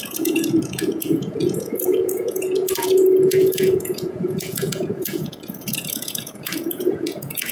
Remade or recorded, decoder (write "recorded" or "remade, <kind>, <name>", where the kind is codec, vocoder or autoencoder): remade, vocoder, Vocos